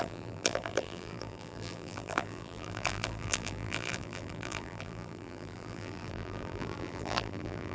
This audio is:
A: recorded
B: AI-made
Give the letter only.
B